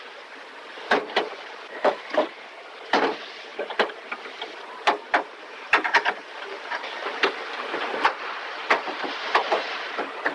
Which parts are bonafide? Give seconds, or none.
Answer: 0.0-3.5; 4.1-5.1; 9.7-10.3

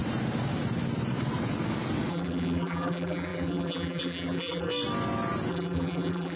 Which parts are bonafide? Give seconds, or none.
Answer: 0.0-2.1; 4.7-5.5